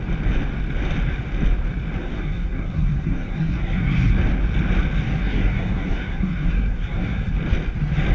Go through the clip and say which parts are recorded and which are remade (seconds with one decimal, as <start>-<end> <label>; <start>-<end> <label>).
0.0-2.0 recorded; 2.0-4.1 remade; 4.1-5.2 recorded; 5.2-7.3 remade; 7.3-8.1 recorded